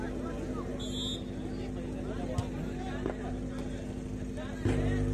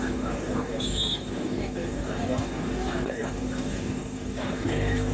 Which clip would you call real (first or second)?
first